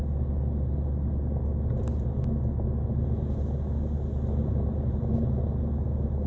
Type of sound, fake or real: real